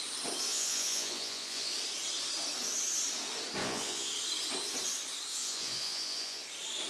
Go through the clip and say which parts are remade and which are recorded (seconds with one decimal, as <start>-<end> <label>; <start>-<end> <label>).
0.0-0.5 recorded; 0.5-1.7 remade; 1.7-3.6 recorded; 3.6-4.1 remade; 4.1-5.3 recorded; 5.3-6.4 remade; 6.4-6.9 recorded